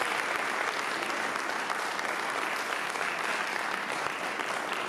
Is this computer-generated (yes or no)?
no